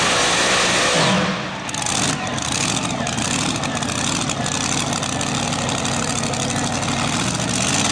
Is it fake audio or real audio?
real